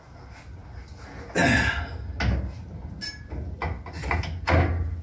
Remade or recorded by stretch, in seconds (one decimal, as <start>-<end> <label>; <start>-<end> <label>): 0.0-5.0 recorded